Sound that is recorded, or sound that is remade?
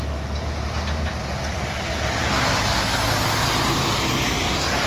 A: recorded